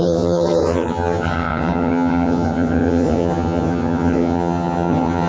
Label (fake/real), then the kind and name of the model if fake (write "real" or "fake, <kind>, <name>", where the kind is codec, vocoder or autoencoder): fake, vocoder, HiFi-GAN